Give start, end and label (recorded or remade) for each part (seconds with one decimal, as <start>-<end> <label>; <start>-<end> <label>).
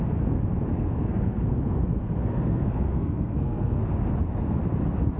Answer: 0.0-0.7 recorded; 0.7-3.8 remade; 3.8-5.2 recorded